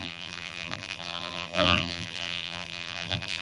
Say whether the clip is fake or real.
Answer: fake